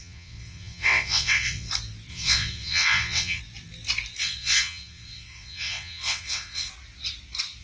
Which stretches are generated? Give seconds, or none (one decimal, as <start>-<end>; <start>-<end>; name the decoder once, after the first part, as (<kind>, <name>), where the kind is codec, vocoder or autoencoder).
0.0-1.7 (vocoder, WaveNeXt); 2.1-3.4; 4.2-6.7